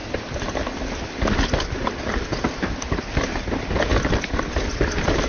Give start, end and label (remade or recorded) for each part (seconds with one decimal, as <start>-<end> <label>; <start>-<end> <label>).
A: 0.0-5.3 recorded